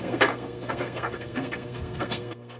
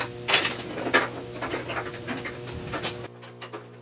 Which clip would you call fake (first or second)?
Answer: first